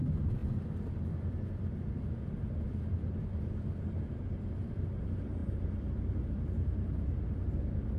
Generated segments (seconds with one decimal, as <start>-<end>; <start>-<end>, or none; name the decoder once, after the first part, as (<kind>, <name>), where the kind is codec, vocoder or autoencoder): 5.4-7.5 (vocoder, BigVGAN v2)